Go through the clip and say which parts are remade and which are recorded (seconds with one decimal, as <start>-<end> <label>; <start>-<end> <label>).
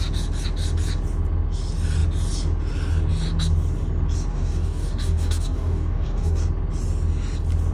0.0-4.3 recorded; 4.3-6.4 remade; 6.4-7.7 recorded